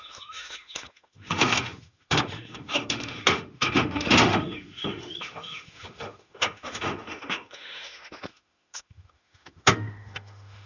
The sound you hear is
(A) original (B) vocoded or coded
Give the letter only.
B